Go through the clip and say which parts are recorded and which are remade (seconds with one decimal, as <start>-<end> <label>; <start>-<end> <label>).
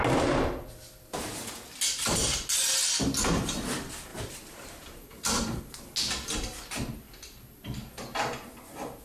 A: 0.0-4.1 recorded; 4.1-5.6 remade; 5.6-9.0 recorded